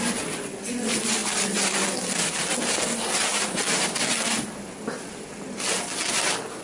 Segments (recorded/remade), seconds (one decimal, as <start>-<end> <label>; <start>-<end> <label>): 0.0-6.6 recorded